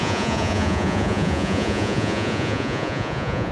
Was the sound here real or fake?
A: fake